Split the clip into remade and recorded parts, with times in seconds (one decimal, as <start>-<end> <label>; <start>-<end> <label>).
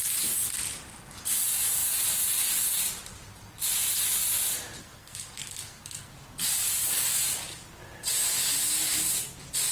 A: 0.0-4.8 recorded; 4.8-6.1 remade; 6.1-9.7 recorded